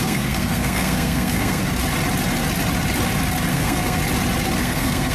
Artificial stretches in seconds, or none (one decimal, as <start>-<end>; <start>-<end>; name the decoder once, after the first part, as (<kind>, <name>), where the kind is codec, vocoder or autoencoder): 0.0-1.6 (codec, SNAC); 3.5-4.0; 4.6-5.1